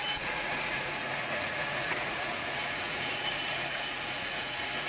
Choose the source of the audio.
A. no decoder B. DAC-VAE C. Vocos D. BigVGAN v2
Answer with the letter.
C